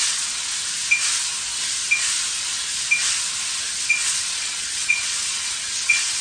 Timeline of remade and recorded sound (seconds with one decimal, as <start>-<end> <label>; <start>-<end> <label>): 0.0-0.5 remade; 0.5-3.9 recorded; 3.9-6.2 remade